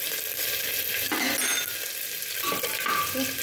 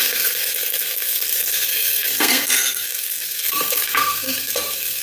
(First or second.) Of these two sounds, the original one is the first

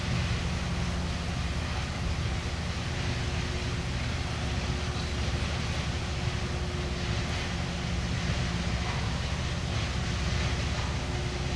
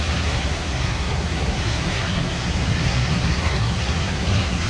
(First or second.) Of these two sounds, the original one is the first